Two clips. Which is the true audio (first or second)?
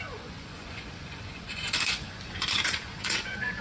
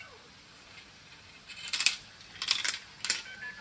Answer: second